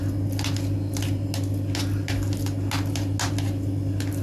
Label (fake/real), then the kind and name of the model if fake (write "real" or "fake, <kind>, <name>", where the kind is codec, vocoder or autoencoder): real